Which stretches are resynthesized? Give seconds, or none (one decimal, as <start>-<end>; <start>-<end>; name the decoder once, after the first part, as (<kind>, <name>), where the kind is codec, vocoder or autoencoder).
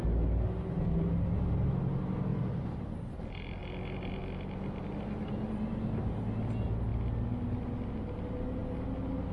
2.3-3.2 (vocoder, BigVGAN v2)